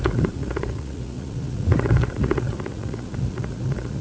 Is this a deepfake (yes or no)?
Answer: yes